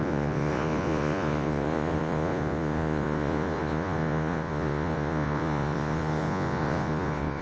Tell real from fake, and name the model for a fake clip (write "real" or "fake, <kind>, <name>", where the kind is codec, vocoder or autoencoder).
fake, vocoder, Vocos